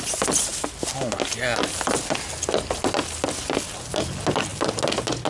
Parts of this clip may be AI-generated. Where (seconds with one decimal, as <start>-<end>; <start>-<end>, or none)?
none